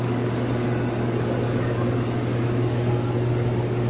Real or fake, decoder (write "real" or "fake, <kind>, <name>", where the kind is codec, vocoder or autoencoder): fake, codec, DAC